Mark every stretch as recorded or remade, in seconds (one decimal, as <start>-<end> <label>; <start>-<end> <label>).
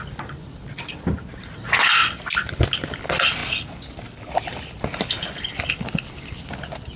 0.0-7.0 recorded